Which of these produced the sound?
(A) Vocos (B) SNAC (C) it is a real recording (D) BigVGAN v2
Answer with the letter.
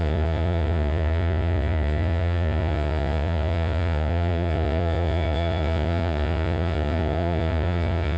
A